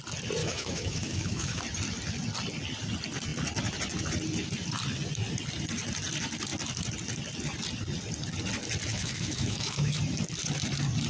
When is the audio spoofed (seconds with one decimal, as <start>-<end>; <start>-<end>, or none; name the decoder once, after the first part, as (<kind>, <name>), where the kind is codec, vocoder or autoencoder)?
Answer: 0.4-1.6 (autoencoder, DAC-VAE); 8.9-10.0